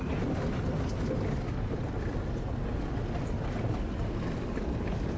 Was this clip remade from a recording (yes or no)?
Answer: no